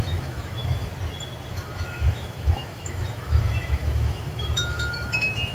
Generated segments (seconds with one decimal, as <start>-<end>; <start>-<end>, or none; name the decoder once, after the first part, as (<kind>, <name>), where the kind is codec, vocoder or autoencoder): 0.0-0.9 (autoencoder, DAC-VAE); 1.5-5.5